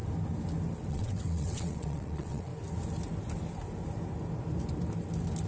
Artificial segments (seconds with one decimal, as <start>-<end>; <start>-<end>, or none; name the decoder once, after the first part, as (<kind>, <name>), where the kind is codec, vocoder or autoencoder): 0.9-2.5 (vocoder, WaveNeXt)